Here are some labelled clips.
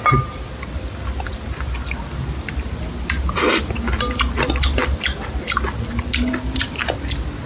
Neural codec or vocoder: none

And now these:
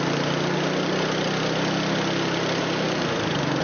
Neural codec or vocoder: none